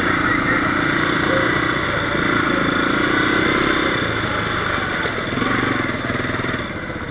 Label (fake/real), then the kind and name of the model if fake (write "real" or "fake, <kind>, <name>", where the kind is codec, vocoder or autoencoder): real